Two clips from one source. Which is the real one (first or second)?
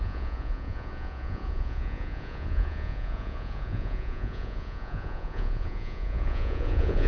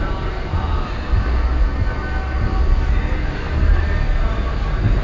second